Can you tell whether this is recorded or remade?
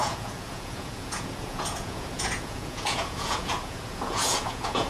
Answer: remade